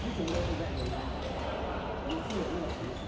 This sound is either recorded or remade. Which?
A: recorded